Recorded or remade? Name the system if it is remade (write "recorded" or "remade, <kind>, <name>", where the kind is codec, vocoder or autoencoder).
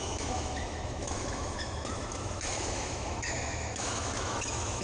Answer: remade, autoencoder, DAC-VAE